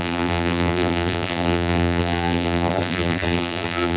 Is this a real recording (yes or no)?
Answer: no